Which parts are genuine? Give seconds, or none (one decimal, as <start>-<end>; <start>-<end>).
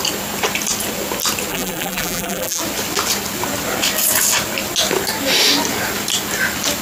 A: 0.0-1.5; 2.6-6.8